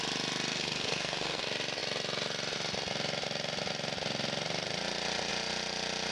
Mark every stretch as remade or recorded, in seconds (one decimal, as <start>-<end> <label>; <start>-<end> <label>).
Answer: 0.0-0.5 recorded; 0.5-1.4 remade; 1.4-6.1 recorded